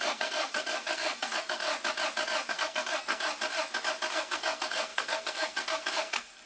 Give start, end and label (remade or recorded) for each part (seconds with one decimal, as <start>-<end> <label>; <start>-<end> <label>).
0.0-1.7 remade; 1.7-2.5 recorded; 2.5-3.3 remade; 3.3-4.1 recorded; 4.1-6.5 remade